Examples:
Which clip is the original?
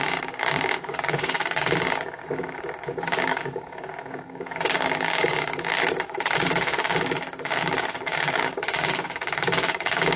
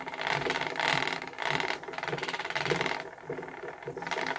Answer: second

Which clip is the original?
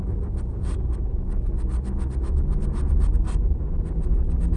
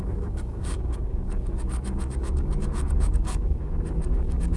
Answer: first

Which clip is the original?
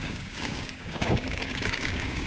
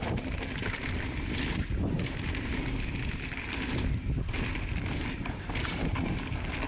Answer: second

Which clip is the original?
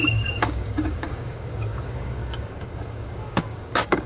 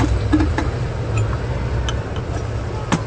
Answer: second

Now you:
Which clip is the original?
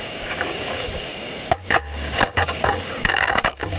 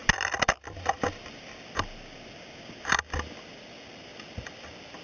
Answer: second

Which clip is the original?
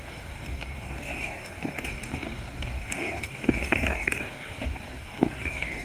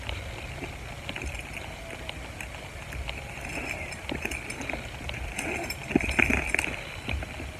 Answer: second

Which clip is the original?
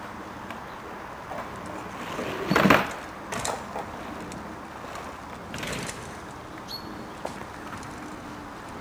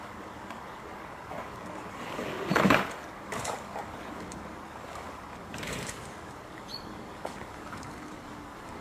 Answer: first